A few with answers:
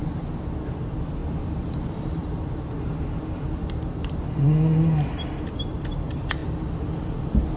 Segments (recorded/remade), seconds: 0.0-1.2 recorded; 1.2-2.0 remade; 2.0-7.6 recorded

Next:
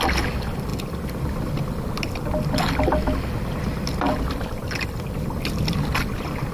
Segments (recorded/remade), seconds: 0.0-6.5 recorded

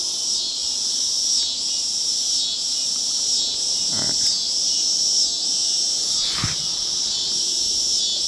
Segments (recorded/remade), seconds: 0.0-8.3 recorded

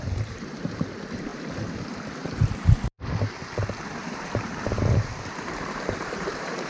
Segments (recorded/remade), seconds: 0.0-1.3 remade; 1.3-4.0 recorded; 4.0-6.7 remade

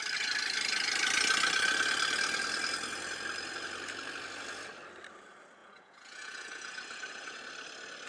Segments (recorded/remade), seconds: 0.0-5.6 recorded; 5.6-7.4 remade; 7.4-8.1 recorded